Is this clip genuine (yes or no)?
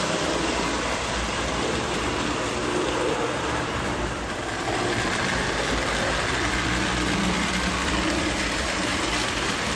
no